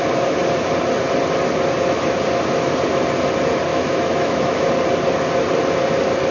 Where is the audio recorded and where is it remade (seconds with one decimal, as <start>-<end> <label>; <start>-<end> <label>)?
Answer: 0.0-3.7 recorded; 3.7-4.7 remade; 4.7-6.3 recorded